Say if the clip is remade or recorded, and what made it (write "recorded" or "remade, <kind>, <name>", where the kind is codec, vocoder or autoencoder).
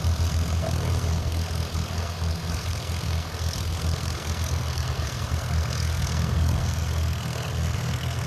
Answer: remade, codec, SNAC